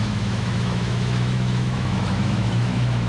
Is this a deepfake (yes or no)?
yes